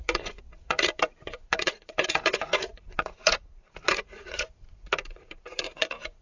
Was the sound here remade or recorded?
remade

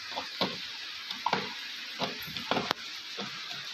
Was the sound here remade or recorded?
recorded